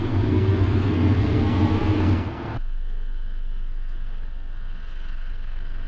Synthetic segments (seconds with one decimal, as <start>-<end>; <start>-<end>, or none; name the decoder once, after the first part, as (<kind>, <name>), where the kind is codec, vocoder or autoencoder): 0.0-5.9 (codec, SNAC)